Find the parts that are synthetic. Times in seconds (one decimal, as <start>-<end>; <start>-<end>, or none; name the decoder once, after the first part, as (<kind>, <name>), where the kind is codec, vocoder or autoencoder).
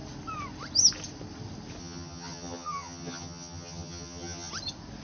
1.8-4.5 (vocoder, HiFi-GAN)